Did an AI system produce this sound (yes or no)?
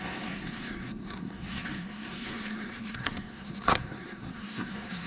yes